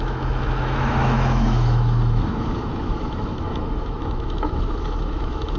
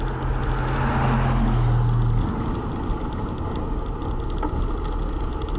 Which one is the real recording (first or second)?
second